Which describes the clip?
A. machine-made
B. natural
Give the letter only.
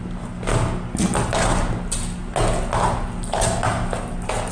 B